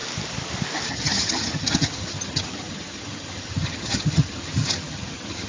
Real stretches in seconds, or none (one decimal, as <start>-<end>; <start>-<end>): 0.0-0.9